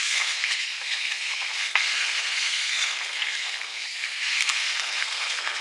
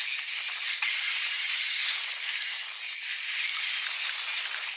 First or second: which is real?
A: second